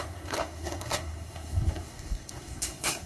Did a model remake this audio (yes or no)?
yes